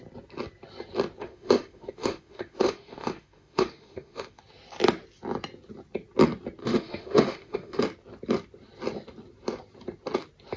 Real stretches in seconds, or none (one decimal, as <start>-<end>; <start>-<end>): 0.0-1.2; 4.4-6.6; 7.8-10.6